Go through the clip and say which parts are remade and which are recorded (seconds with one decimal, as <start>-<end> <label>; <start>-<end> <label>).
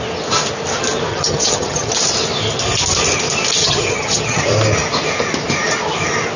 0.0-1.1 recorded; 1.1-1.9 remade; 1.9-3.6 recorded; 3.6-4.4 remade; 4.4-6.4 recorded